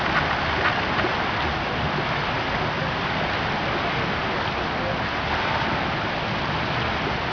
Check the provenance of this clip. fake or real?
real